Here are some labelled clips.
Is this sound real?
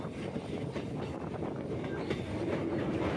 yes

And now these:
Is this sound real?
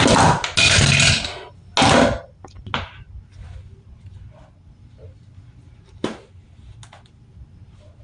yes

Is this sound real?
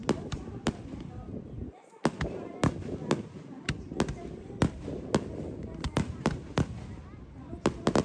yes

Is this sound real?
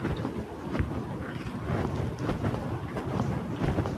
yes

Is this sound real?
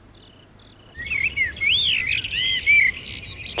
yes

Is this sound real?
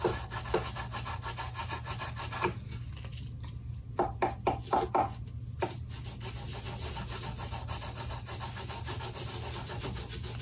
yes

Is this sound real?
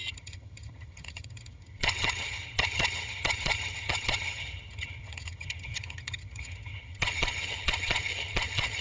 no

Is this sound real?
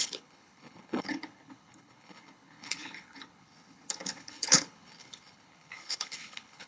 no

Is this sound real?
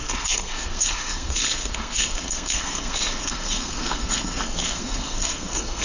no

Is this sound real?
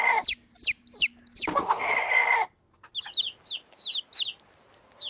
yes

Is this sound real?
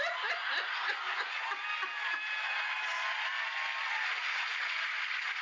yes